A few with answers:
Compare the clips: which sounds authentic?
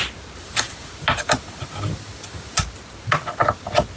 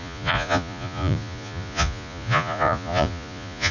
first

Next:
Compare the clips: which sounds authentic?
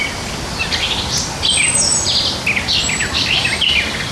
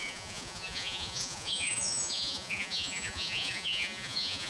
first